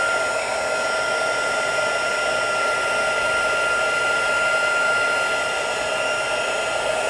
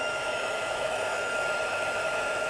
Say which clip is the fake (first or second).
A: second